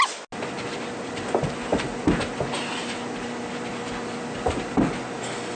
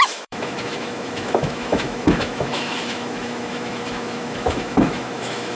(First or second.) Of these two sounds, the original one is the first